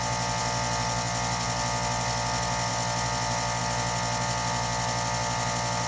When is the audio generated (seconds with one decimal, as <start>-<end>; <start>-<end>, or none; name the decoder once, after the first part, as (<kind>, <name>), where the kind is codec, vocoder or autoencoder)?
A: none